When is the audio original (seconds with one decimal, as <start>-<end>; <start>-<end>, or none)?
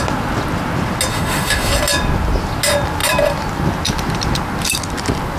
0.0-1.1; 1.7-5.4